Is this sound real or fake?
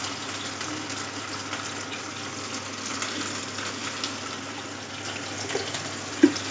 real